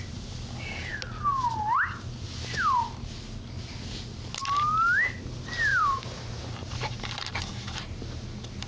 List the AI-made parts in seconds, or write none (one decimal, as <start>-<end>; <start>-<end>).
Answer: 5.7-7.4